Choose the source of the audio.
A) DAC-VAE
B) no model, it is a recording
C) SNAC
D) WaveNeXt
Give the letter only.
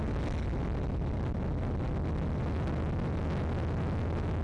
B